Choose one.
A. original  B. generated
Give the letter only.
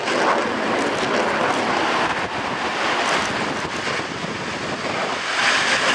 A